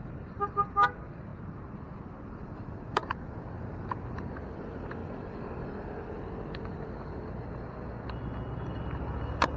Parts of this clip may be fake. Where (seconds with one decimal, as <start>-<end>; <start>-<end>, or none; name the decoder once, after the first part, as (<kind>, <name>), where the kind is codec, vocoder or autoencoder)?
0.0-0.7 (vocoder, BigVGAN v2)